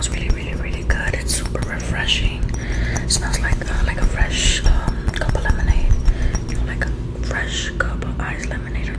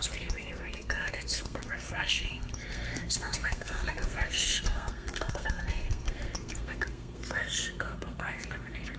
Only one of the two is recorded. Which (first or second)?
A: first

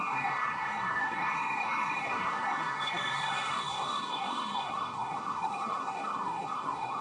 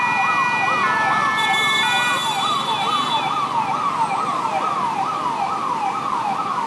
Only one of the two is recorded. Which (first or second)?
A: second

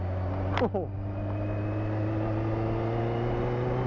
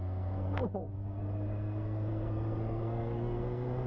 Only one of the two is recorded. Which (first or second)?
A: first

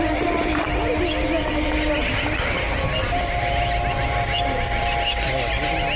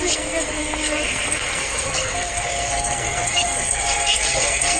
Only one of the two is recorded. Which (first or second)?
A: first